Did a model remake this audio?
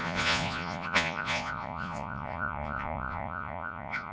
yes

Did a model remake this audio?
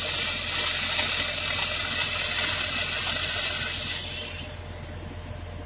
no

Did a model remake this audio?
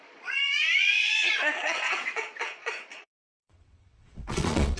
yes